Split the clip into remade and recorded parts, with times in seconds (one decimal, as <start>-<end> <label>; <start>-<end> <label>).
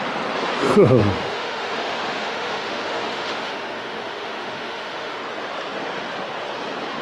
0.0-1.0 recorded; 1.0-5.2 remade; 5.2-7.0 recorded